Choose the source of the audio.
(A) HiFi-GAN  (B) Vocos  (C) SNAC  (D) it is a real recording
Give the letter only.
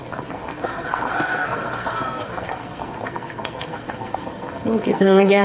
C